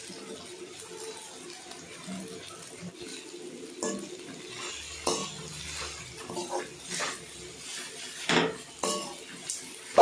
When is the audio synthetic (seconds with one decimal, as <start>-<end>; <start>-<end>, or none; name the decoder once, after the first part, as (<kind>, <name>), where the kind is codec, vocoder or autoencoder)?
none